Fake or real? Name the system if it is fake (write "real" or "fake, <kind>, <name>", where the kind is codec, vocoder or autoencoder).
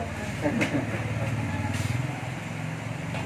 real